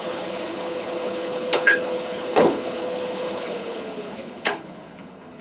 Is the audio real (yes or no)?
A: no